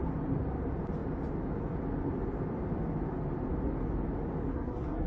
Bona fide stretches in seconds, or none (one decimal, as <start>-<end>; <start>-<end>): 0.0-4.5